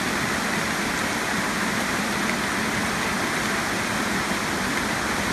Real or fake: real